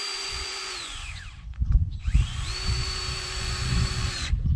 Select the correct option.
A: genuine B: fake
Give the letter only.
B